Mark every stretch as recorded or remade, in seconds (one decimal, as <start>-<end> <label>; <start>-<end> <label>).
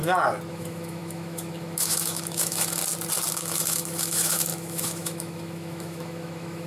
0.0-0.5 recorded; 0.5-2.8 remade; 2.8-3.3 recorded; 3.3-6.7 remade